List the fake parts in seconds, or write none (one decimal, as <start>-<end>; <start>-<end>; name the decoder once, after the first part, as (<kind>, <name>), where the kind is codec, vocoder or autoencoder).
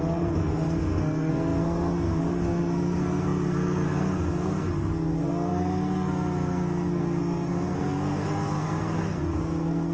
0.0-9.9 (codec, SNAC)